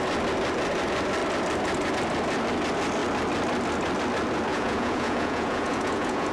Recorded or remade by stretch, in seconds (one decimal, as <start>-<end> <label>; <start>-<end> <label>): 0.0-4.5 recorded; 4.5-6.3 remade